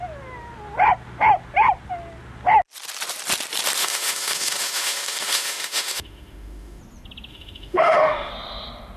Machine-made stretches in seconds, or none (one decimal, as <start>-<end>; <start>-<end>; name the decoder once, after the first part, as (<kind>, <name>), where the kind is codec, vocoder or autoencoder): 3.8-6.8 (autoencoder, DAC-VAE); 7.3-8.3

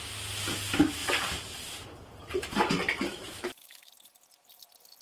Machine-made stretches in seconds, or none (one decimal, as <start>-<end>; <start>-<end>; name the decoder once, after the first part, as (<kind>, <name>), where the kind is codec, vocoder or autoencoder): 3.1-3.9 (autoencoder, DAC-VAE)

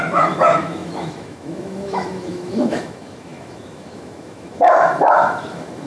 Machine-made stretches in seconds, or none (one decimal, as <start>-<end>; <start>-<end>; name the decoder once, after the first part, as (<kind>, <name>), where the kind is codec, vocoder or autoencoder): 0.0-5.9 (autoencoder, DAC-VAE)

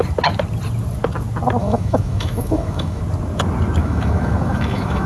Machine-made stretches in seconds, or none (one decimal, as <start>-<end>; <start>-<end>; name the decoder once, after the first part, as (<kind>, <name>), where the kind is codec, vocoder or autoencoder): 1.6-3.0 (autoencoder, DAC-VAE); 3.8-5.1

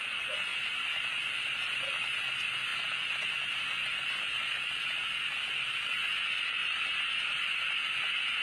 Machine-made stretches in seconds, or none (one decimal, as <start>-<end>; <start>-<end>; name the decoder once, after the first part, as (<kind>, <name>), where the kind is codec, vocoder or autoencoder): none

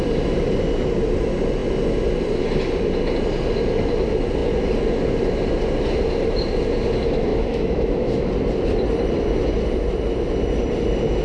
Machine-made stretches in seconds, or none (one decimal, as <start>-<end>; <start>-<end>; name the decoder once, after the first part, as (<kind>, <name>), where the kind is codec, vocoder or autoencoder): 7.3-8.3 (autoencoder, DAC-VAE)